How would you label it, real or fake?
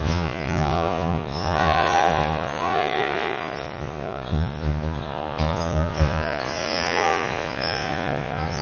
fake